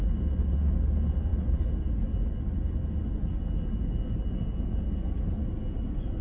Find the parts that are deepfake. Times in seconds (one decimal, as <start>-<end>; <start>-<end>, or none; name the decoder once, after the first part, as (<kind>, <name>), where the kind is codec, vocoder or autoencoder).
none